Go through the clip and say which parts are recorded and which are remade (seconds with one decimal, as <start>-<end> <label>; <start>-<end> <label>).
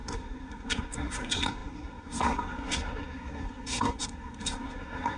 0.0-5.2 remade